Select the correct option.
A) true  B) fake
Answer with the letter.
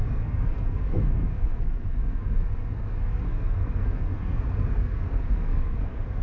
B